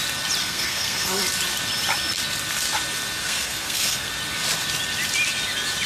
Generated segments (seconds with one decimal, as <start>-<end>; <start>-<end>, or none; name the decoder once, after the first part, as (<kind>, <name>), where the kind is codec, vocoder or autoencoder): 0.4-1.2 (codec, SNAC); 3.2-4.1